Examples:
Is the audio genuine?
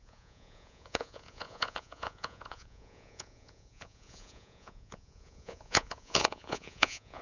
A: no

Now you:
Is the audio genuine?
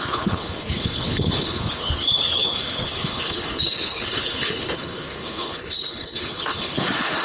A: no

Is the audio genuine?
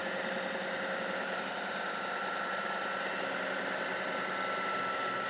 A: yes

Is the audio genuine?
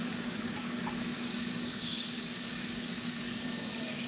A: no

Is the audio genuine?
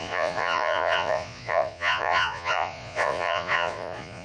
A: no